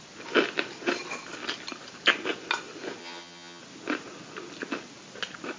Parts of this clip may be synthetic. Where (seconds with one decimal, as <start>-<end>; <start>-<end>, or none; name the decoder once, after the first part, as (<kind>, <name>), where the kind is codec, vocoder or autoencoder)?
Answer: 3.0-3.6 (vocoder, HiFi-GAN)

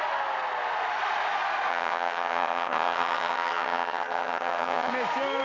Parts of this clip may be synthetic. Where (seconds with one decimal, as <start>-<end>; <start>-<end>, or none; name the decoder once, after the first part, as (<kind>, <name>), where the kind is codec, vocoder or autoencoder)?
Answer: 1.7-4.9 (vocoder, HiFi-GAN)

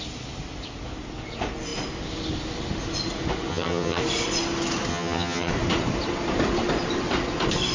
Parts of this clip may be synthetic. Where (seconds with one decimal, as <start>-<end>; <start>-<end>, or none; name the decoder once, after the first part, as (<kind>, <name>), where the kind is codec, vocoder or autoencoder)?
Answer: 3.5-4.0 (vocoder, HiFi-GAN); 4.9-5.5

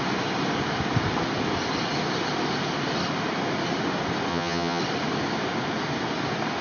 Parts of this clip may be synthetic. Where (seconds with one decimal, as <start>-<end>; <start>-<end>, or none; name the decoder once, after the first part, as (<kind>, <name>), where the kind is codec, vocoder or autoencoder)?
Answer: 4.3-4.8 (vocoder, HiFi-GAN)